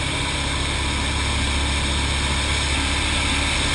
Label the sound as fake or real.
real